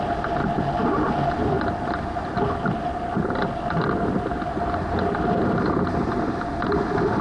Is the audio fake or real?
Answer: real